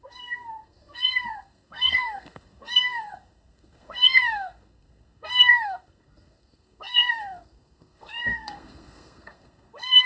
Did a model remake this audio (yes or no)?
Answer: yes